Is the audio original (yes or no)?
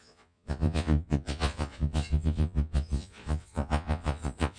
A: no